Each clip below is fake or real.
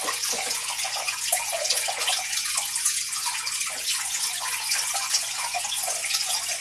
fake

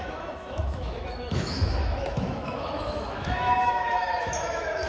fake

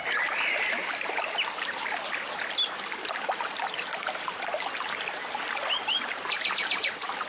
real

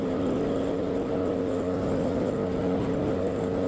real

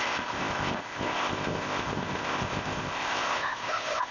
fake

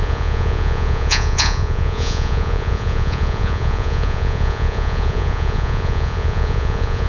fake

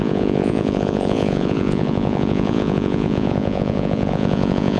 fake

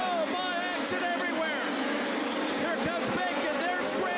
real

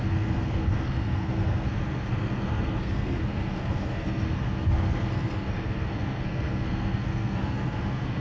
fake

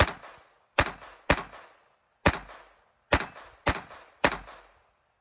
real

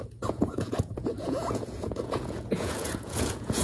fake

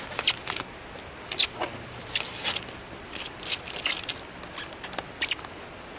real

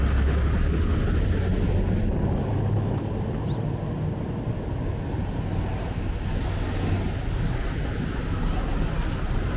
real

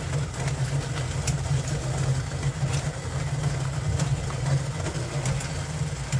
real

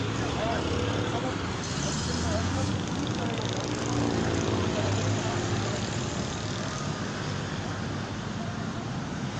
real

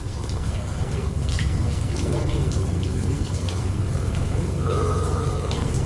fake